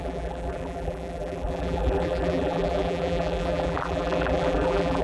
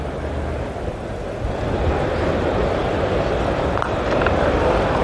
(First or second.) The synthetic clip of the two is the first